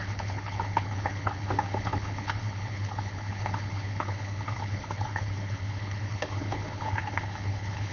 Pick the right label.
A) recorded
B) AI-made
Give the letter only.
B